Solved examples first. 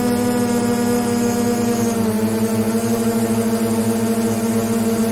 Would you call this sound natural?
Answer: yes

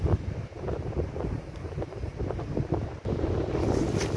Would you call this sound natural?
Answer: yes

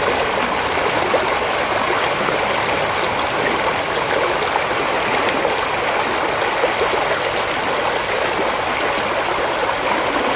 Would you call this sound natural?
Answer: yes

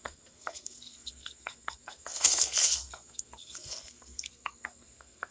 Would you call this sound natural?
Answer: no